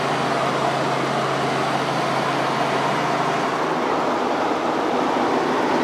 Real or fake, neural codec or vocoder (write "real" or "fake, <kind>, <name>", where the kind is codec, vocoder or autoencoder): real